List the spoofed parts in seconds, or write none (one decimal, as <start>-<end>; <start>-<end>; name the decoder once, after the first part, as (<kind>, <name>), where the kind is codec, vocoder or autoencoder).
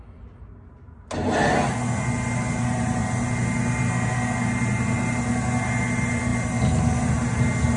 none